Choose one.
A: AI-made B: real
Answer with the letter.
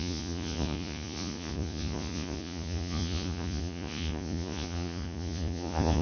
A